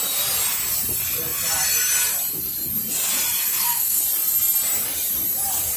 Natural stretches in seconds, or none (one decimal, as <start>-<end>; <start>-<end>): 0.0-3.5; 4.0-5.8